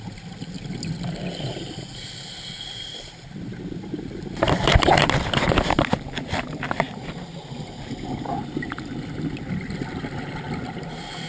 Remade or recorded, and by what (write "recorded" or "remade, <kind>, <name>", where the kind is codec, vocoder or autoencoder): recorded